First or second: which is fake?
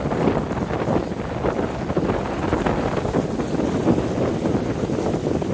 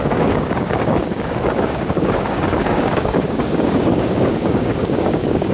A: second